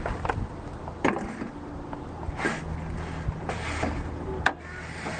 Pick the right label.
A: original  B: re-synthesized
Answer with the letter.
A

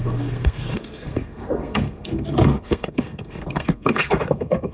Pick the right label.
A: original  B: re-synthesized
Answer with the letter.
B